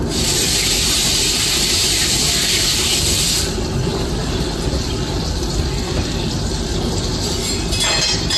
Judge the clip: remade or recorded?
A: remade